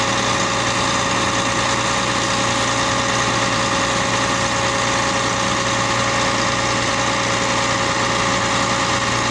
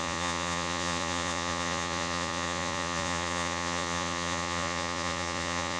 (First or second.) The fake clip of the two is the second